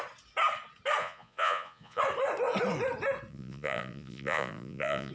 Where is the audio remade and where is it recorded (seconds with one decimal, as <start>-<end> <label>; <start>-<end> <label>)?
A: 0.0-1.0 recorded; 1.0-2.0 remade; 2.0-3.3 recorded; 3.3-5.1 remade